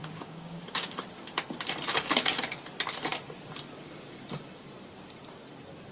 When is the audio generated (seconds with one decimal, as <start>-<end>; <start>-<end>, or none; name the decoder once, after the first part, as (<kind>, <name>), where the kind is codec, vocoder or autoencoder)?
0.0-1.0 (codec, DAC); 1.9-2.4

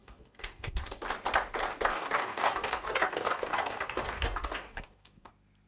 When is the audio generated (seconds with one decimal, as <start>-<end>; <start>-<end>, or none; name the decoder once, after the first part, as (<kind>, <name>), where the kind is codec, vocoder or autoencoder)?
0.0-1.0 (codec, DAC); 1.9-5.3

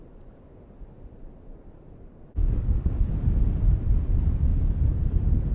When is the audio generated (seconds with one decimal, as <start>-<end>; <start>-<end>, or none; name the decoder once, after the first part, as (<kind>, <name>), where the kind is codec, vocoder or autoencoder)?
2.4-3.1 (codec, DAC)

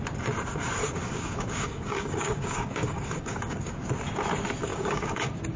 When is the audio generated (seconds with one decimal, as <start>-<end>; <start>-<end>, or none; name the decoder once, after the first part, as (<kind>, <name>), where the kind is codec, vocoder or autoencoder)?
0.8-3.7 (codec, DAC); 4.7-5.6